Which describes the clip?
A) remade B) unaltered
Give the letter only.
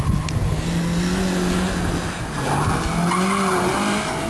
B